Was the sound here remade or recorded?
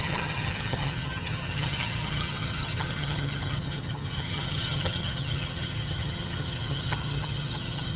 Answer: remade